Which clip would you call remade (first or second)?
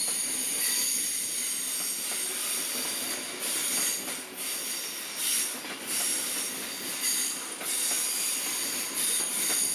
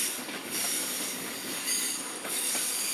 second